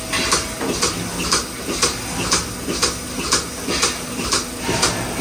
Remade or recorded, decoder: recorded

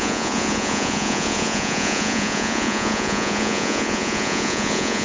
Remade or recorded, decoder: remade, vocoder, Vocos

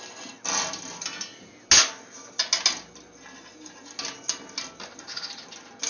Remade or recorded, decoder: recorded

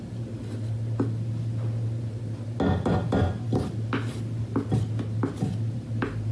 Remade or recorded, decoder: recorded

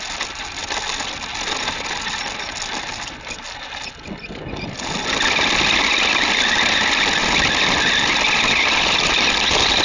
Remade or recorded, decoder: recorded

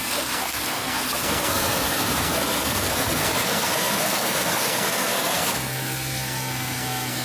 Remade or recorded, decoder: remade, codec, SNAC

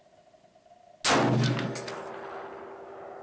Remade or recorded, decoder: recorded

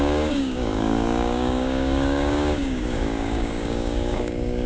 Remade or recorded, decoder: remade, codec, DAC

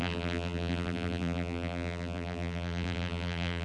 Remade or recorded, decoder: remade, vocoder, BigVGAN v2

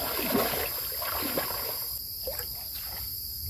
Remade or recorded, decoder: recorded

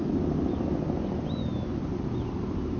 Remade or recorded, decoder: recorded